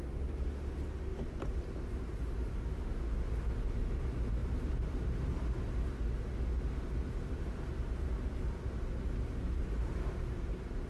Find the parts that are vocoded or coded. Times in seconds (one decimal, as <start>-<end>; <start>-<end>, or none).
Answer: none